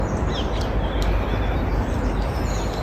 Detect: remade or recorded recorded